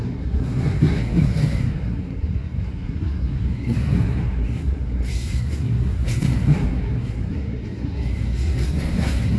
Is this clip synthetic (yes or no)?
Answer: yes